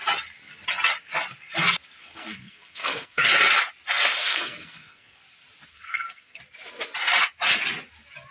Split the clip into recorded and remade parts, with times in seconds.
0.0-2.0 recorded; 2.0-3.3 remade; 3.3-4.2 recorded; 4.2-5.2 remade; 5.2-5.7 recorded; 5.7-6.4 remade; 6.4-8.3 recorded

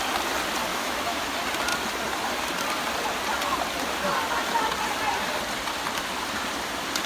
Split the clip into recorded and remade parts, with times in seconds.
0.0-0.7 recorded; 0.7-1.2 remade; 1.2-7.1 recorded

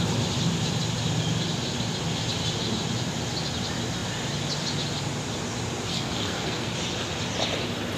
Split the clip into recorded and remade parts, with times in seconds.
0.0-5.9 recorded; 5.9-6.7 remade; 6.7-8.0 recorded

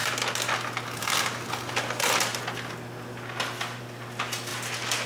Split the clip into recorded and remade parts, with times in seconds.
0.0-5.1 recorded

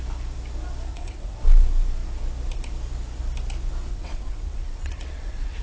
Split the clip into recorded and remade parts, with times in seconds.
0.0-0.9 recorded; 0.9-1.4 remade; 1.4-3.9 recorded; 3.9-5.6 remade

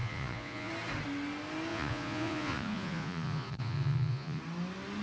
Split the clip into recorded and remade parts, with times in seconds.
0.0-0.7 remade; 0.7-1.7 recorded; 1.7-4.4 remade; 4.4-5.0 recorded

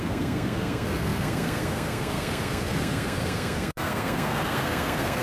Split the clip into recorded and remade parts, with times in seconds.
0.0-5.2 remade

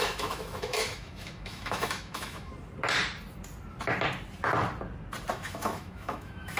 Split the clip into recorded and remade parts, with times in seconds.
0.0-2.5 remade; 2.5-5.3 recorded; 5.3-6.6 remade